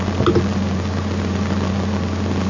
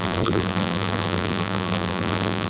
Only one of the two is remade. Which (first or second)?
second